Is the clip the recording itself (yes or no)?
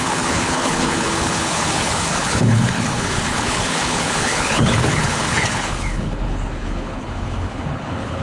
no